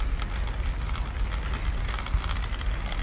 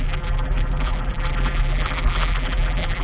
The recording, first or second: first